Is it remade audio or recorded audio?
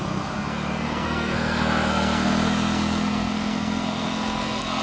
remade